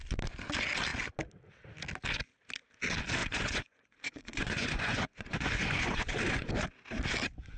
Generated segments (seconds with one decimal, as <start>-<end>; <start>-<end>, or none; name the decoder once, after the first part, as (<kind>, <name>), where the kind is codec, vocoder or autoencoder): 3.2-6.5 (vocoder, Vocos)